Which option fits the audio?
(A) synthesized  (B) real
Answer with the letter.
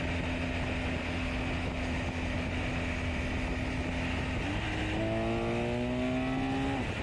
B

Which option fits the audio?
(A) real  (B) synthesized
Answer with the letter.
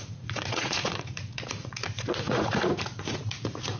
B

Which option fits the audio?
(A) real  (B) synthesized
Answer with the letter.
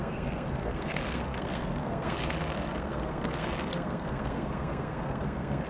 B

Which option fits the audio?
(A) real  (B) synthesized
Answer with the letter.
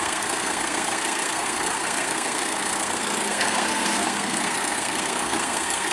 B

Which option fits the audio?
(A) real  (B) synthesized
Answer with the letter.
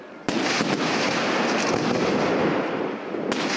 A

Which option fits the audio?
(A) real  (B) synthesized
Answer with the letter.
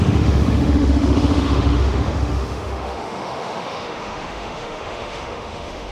B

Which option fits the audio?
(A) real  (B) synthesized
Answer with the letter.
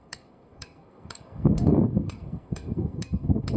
B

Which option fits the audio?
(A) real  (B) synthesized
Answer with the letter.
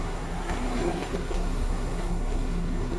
B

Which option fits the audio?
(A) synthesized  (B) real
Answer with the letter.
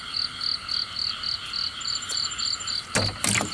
B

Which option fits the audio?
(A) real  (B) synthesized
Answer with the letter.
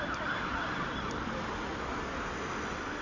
A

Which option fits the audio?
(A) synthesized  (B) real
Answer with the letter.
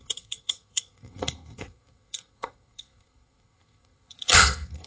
A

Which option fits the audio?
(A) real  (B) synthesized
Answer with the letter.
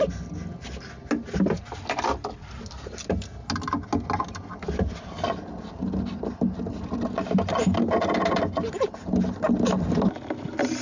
A